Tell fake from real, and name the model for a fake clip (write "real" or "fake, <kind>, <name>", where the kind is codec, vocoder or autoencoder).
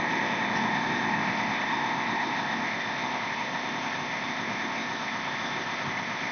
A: fake, codec, ZipCodec